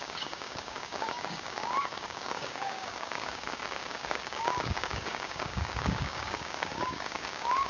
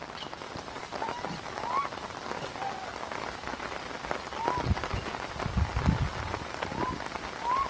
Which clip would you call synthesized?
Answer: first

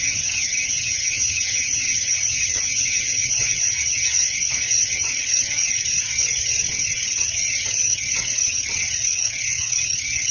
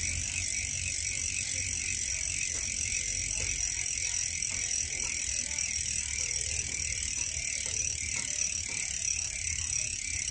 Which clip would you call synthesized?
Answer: first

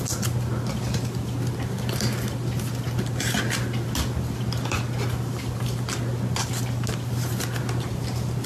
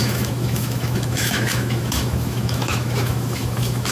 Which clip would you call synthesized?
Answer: second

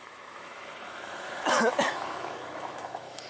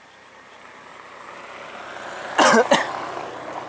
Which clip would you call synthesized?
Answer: first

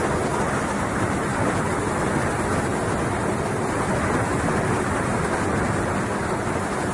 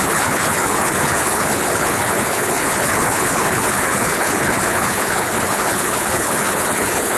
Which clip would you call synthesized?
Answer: second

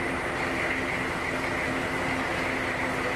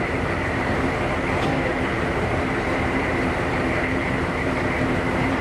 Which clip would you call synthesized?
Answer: second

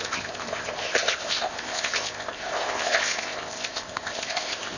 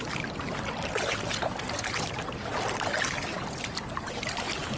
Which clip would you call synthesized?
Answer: first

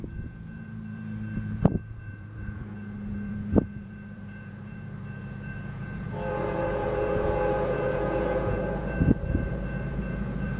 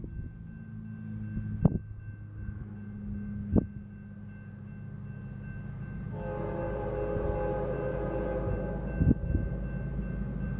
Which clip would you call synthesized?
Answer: first